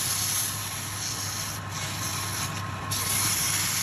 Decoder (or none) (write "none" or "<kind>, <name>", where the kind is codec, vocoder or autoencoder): none